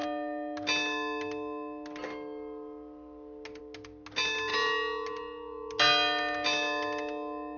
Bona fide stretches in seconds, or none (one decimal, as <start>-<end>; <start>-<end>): 0.0-7.6